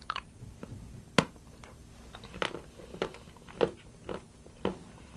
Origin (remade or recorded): recorded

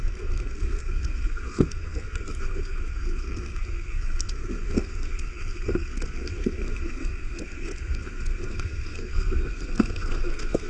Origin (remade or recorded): remade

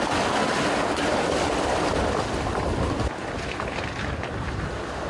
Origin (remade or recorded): recorded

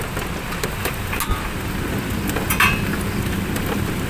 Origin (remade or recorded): recorded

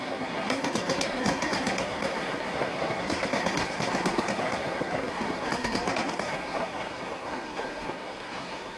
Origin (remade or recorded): remade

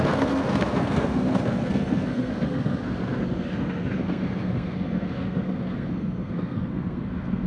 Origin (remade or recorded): remade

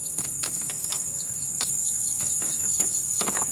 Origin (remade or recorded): remade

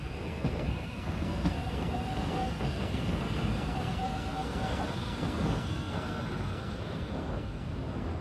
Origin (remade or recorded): remade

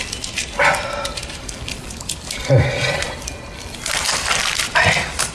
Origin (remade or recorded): recorded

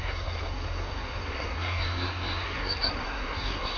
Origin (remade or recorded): remade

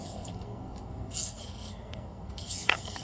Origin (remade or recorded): remade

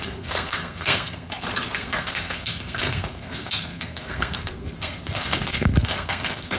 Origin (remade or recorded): remade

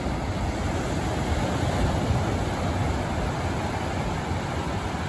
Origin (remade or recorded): recorded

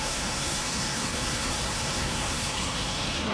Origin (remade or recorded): remade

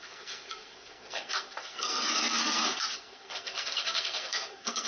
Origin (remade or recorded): remade